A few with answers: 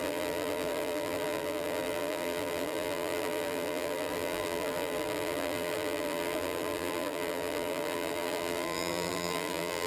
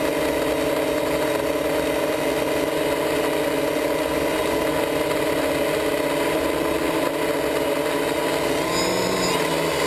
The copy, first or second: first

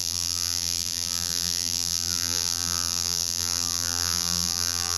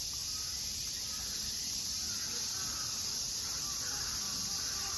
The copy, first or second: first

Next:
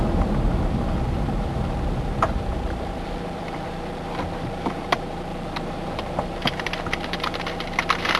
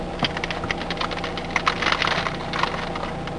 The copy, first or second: first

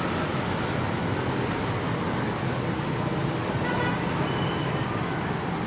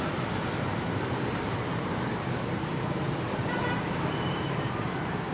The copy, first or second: second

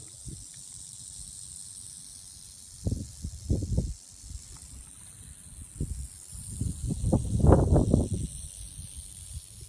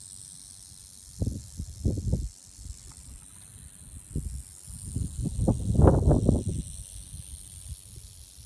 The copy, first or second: first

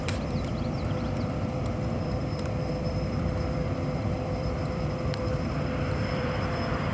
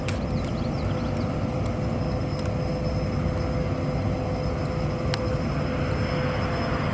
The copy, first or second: first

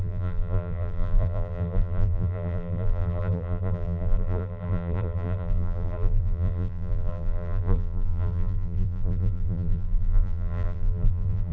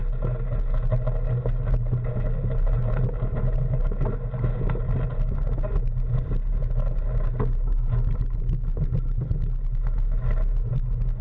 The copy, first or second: first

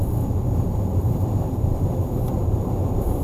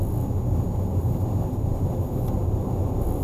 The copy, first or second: first